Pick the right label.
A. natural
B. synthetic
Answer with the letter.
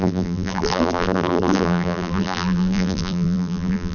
B